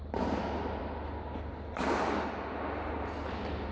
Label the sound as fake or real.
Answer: real